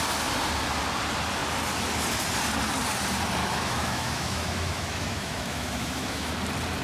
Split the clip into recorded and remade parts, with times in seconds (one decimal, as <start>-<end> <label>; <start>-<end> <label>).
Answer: 0.0-3.4 recorded; 3.4-6.3 remade; 6.3-6.8 recorded